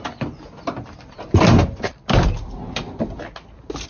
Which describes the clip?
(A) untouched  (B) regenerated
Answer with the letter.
A